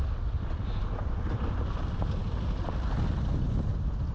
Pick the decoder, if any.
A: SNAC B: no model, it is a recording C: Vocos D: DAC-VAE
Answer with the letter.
B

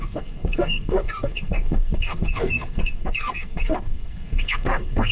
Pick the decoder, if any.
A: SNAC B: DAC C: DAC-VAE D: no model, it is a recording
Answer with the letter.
A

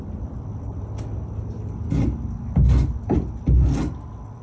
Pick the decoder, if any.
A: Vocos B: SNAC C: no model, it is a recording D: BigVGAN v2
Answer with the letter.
C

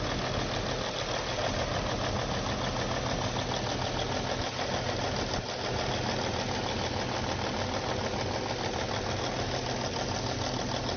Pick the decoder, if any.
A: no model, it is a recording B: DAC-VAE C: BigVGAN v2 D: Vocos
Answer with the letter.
A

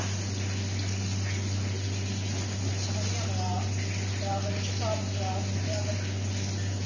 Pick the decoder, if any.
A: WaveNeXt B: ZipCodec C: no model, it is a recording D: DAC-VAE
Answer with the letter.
C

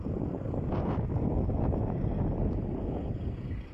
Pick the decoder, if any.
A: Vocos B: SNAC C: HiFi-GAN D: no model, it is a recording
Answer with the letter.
D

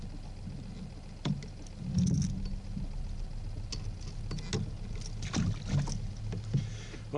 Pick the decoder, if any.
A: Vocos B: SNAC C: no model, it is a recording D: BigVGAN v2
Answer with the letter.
C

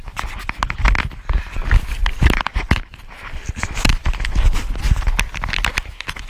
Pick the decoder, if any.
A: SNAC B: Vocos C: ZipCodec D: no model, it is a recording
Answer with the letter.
D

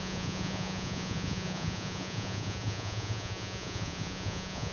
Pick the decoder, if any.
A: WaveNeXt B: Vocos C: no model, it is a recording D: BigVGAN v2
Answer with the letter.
B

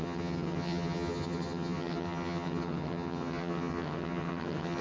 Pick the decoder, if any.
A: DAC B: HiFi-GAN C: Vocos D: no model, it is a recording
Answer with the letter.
B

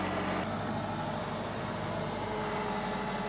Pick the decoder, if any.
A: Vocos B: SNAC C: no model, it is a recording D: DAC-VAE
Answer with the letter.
C